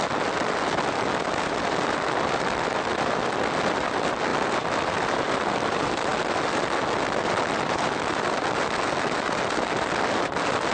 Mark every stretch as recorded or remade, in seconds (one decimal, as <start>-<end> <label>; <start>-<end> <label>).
0.0-10.7 recorded